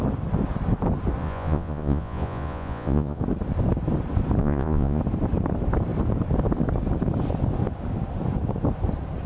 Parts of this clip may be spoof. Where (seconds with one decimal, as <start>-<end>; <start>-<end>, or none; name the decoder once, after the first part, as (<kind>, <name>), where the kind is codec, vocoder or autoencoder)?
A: 1.2-3.2 (vocoder, Vocos); 4.4-5.0